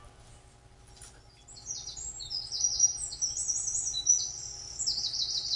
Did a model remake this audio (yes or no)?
no